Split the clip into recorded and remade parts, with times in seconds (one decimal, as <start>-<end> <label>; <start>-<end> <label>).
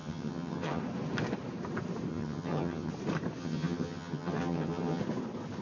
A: 0.0-0.8 remade; 0.8-2.1 recorded; 2.1-2.9 remade; 2.9-3.4 recorded; 3.4-5.0 remade; 5.0-5.6 recorded